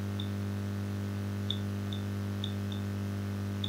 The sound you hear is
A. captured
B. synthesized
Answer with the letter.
A